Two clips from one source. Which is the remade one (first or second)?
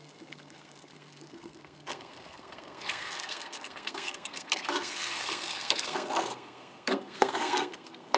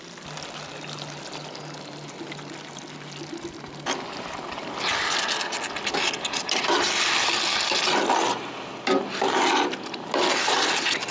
first